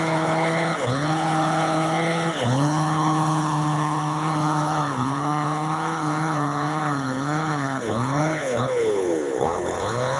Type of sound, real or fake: fake